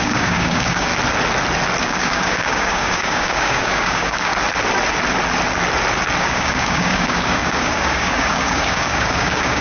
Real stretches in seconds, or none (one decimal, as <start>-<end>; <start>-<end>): 0.9-1.8; 4.3-6.2